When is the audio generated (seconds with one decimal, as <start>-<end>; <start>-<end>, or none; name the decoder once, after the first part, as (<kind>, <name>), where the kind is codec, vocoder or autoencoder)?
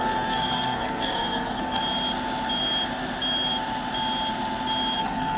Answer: 0.0-1.8 (codec, SNAC); 5.0-5.4